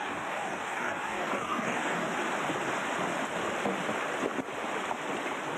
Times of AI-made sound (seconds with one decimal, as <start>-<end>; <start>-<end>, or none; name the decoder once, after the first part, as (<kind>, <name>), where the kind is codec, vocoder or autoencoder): 0.0-2.1 (codec, DAC)